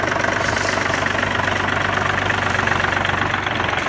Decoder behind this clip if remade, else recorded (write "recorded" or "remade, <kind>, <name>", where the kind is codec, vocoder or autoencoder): recorded